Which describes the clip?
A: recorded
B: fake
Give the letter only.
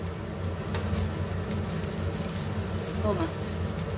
A